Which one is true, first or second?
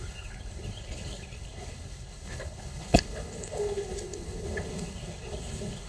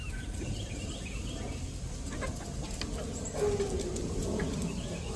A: second